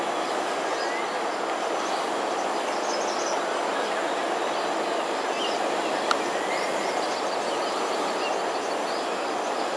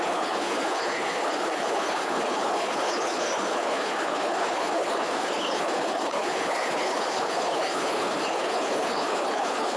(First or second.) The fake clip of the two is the second